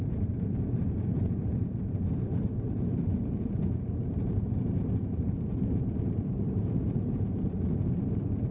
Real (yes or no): no